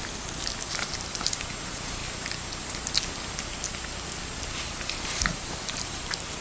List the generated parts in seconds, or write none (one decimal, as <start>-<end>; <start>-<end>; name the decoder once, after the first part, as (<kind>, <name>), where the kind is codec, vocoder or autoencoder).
0.7-2.0 (vocoder, BigVGAN v2); 4.6-6.4